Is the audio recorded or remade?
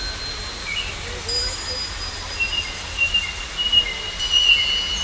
recorded